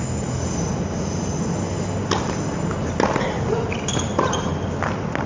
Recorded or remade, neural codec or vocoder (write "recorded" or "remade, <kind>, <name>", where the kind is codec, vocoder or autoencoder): recorded